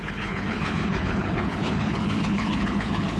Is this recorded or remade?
remade